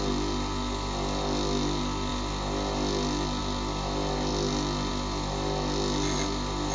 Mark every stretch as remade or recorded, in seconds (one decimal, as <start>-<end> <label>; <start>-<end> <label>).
0.0-6.7 recorded